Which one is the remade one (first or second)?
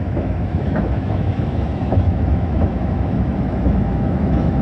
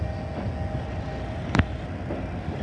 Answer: first